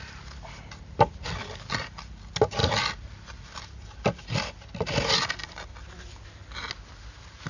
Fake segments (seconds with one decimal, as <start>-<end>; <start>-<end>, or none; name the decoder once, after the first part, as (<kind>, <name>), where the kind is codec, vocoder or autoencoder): none